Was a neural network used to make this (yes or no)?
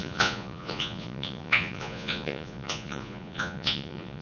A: yes